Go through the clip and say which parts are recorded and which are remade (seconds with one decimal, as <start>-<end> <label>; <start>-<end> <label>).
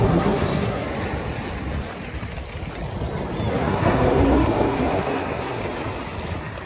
0.0-0.9 remade; 0.9-3.5 recorded; 3.5-5.6 remade; 5.6-6.7 recorded